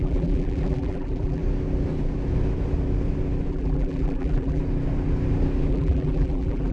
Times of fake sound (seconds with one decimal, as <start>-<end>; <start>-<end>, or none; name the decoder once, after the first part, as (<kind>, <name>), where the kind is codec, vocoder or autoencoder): 0.0-1.4 (vocoder, BigVGAN v2); 3.5-4.6; 5.7-6.7